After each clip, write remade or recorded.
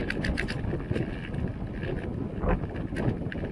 recorded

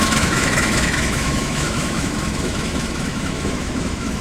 remade